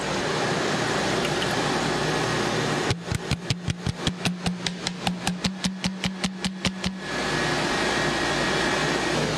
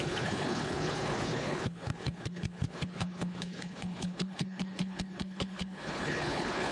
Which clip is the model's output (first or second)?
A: second